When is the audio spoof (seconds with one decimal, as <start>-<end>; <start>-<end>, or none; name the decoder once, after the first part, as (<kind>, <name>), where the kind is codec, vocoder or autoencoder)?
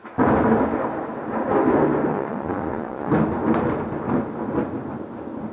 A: 2.1-3.1 (vocoder, Vocos)